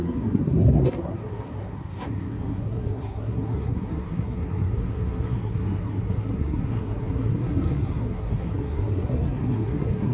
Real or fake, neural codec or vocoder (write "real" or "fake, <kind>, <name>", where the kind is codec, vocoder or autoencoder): fake, codec, SNAC